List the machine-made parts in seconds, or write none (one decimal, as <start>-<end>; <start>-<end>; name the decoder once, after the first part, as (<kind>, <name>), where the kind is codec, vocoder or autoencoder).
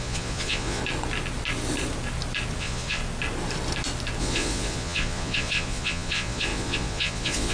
0.0-0.8 (vocoder, Vocos); 2.6-3.0; 4.2-7.5